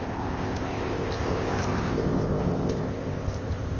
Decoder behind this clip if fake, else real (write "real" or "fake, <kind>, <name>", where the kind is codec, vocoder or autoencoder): fake, codec, ZipCodec